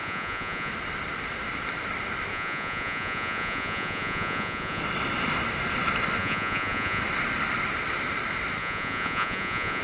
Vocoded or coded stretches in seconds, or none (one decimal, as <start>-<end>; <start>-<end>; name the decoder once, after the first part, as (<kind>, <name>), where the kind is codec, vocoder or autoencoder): 0.0-0.7 (vocoder, Vocos); 2.3-4.8; 6.2-7.0; 8.6-9.8